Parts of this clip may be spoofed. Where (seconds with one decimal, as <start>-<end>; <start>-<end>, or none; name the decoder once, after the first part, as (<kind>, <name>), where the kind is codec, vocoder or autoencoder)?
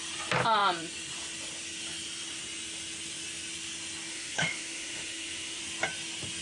4.1-5.6 (autoencoder, DAC-VAE)